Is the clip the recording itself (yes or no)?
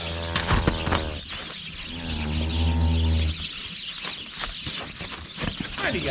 yes